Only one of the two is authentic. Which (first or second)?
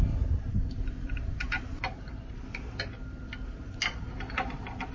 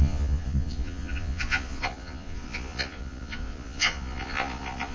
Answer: first